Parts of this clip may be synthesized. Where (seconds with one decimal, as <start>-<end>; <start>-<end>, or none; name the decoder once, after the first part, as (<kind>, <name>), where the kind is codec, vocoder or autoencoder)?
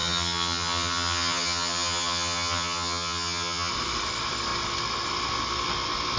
0.0-3.7 (vocoder, HiFi-GAN)